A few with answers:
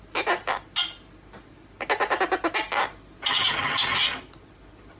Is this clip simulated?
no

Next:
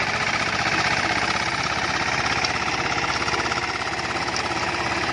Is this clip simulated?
no